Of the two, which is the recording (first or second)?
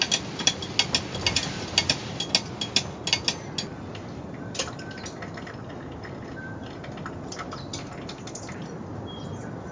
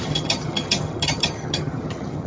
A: first